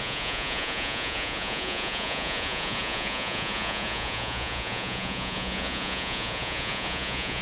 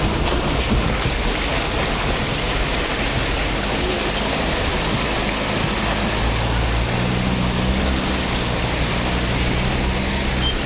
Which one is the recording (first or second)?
second